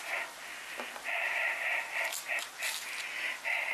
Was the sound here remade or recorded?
recorded